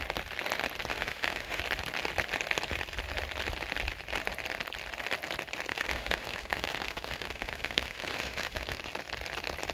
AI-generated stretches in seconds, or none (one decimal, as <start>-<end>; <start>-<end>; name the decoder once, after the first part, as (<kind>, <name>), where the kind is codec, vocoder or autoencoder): 0.9-1.6 (autoencoder, DAC-VAE); 5.7-8.8